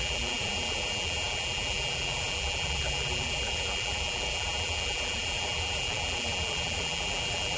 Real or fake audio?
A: fake